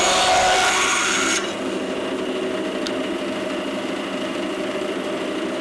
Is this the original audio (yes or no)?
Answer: yes